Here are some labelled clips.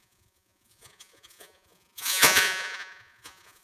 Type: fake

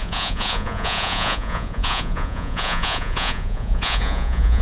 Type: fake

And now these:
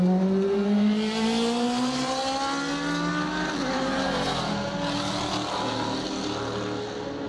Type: real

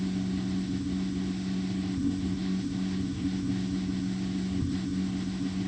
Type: fake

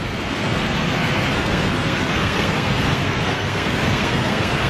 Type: fake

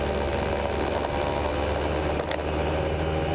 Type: real